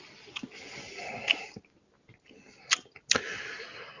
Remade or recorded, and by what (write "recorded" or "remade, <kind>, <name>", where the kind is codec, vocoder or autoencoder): recorded